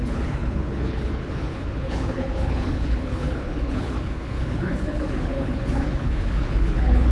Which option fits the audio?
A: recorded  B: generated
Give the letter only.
B